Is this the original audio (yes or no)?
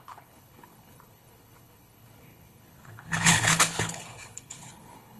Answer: no